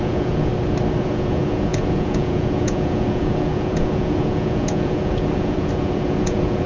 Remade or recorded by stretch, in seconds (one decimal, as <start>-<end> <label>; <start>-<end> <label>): 0.0-0.5 remade; 0.5-1.0 recorded; 1.0-6.7 remade